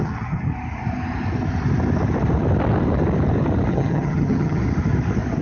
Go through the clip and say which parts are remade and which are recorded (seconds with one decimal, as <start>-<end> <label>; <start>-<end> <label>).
0.0-0.5 remade; 0.5-3.7 recorded; 3.7-4.6 remade; 4.6-5.4 recorded